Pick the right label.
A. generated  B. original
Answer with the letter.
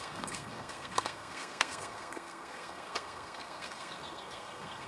A